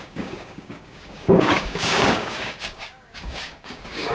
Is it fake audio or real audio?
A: fake